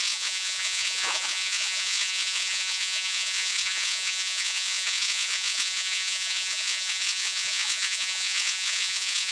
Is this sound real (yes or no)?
no